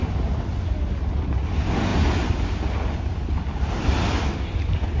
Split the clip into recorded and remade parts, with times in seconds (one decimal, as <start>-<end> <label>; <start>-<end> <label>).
0.0-5.0 recorded